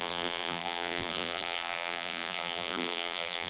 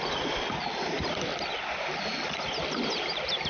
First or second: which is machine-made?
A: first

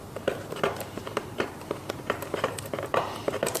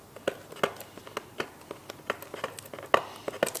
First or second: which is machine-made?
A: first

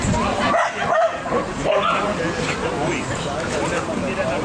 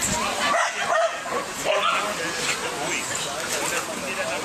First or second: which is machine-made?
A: first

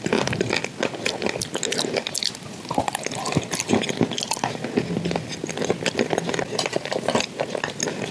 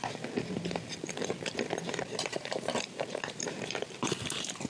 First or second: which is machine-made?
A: second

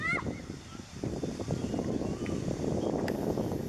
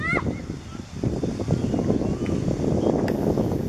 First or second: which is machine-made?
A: first